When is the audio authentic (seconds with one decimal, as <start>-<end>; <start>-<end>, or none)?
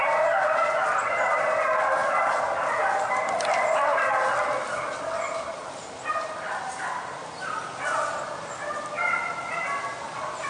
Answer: 0.0-10.5